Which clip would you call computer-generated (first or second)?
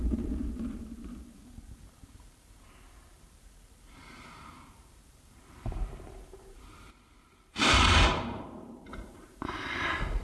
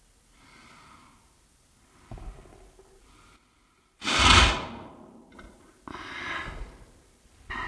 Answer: first